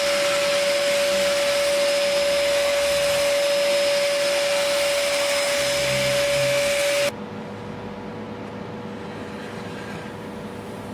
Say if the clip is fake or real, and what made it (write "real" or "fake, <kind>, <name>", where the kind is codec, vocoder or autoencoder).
real